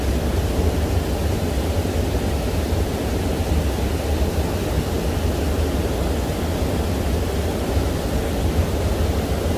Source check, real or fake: real